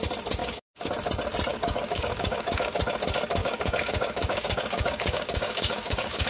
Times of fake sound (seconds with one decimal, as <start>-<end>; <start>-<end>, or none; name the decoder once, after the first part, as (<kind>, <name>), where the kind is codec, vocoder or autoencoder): 0.4-0.9 (codec, DAC); 1.5-2.8; 3.4-6.3